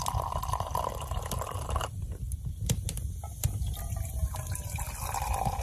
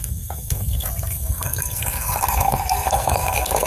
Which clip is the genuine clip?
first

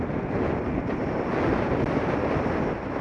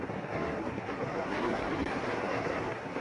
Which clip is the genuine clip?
first